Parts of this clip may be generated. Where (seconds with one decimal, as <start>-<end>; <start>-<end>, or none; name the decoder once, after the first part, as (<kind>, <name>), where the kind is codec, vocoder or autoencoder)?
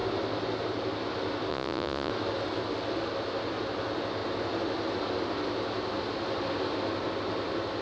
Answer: 1.5-2.1 (vocoder, Vocos)